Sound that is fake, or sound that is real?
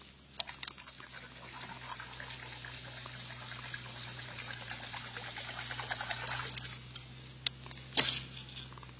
real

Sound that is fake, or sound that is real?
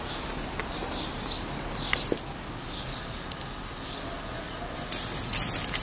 real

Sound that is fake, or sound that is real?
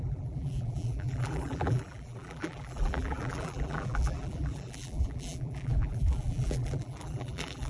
fake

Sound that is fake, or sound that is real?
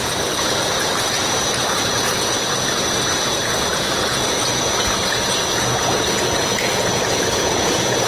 fake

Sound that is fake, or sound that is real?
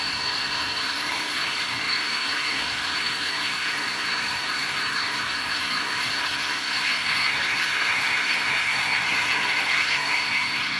fake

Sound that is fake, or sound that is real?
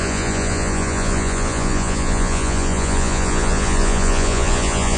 fake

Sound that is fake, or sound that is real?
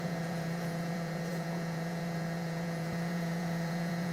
fake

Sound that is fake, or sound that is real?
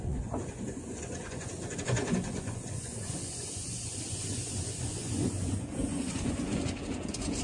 fake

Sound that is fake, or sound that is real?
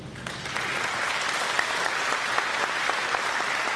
real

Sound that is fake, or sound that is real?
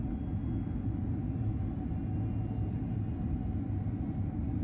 real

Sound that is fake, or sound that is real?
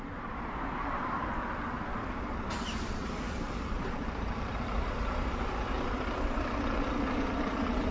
fake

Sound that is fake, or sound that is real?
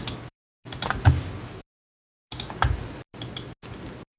real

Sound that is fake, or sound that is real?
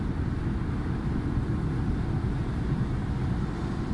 real